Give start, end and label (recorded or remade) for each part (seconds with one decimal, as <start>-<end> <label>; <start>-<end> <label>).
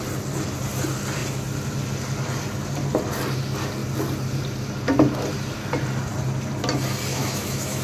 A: 0.0-7.1 recorded; 7.1-7.8 remade